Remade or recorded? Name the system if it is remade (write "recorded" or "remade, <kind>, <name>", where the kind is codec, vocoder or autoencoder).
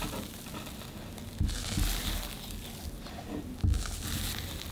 recorded